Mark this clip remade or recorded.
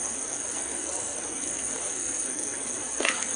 remade